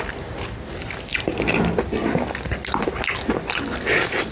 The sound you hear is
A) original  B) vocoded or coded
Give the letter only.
A